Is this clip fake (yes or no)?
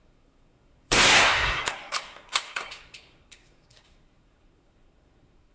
yes